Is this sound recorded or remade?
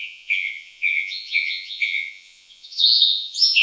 remade